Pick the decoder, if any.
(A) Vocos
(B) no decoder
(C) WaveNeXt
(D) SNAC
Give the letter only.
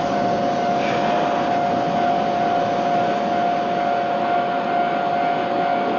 B